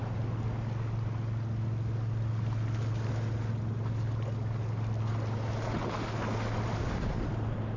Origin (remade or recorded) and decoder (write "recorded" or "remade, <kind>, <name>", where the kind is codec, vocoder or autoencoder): recorded